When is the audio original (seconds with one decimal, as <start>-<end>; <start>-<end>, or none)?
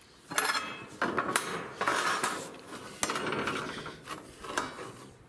0.0-5.3